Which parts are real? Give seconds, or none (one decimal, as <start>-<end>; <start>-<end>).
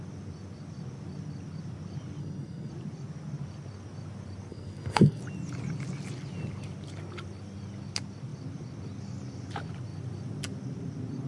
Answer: 0.0-2.2; 2.7-4.5; 5.2-11.3